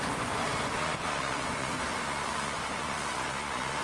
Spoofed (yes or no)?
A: yes